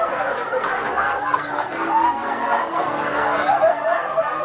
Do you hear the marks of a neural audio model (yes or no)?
yes